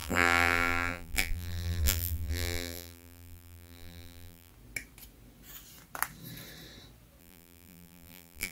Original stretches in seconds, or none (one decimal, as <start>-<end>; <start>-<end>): 4.5-7.2